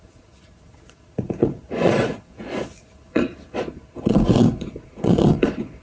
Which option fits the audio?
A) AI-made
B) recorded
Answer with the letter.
A